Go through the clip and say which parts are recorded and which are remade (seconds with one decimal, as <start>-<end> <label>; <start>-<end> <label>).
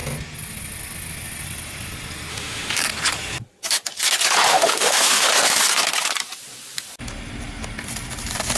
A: 0.0-2.3 recorded; 2.3-2.8 remade; 2.8-4.5 recorded; 4.5-5.3 remade; 5.3-8.6 recorded